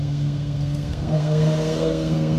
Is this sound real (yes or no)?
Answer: no